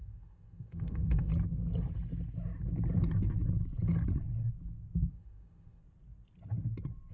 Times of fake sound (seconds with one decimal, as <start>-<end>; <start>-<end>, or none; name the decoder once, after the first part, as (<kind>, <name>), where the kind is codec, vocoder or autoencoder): 0.0-1.3 (autoencoder, DAC-VAE); 5.1-5.8